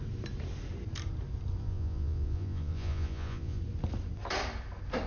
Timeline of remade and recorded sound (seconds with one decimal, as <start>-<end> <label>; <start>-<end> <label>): 0.0-1.6 recorded; 1.6-3.6 remade; 3.6-5.1 recorded